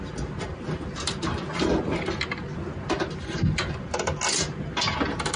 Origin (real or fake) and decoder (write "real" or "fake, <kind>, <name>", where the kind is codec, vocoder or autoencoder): real